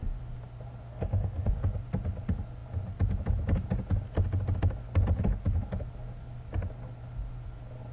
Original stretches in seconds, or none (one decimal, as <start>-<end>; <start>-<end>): 0.0-0.9; 1.5-7.9

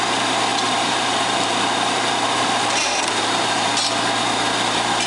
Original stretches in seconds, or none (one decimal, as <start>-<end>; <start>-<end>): 0.0-0.5; 3.6-5.1

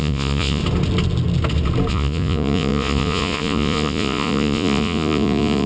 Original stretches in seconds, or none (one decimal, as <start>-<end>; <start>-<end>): 0.6-1.9

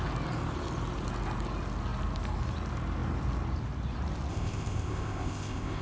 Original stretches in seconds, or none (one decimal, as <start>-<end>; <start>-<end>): 0.0-4.3

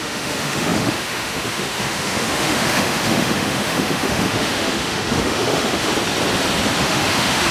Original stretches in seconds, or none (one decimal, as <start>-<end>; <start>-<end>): 5.9-6.8

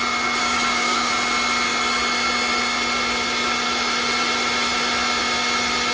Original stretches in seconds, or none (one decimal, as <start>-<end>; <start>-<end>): 0.0-0.4; 1.1-5.9

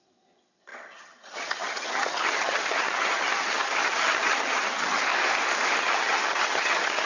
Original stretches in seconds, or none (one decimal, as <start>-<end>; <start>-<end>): 5.1-5.8